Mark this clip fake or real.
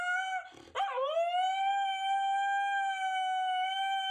real